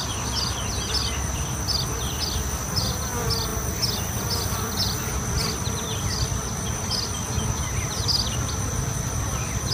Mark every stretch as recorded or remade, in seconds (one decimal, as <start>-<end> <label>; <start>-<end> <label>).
0.0-9.7 recorded

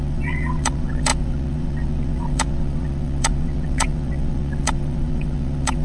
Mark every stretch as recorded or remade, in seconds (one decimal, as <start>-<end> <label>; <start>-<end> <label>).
0.0-5.8 remade

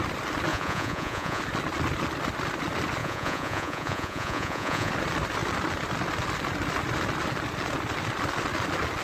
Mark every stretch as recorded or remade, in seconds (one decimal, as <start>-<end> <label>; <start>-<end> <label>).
0.0-0.5 recorded; 0.5-1.4 remade; 1.4-3.0 recorded; 3.0-4.9 remade; 4.9-9.0 recorded

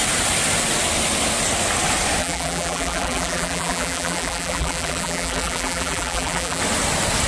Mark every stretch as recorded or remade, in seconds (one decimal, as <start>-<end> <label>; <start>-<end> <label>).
0.0-2.2 recorded; 2.2-6.6 remade; 6.6-7.3 recorded